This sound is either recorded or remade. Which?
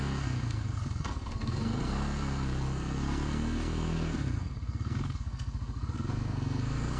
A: remade